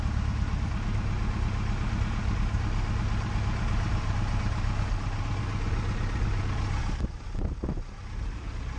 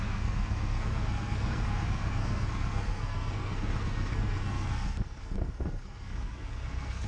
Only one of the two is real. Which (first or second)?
first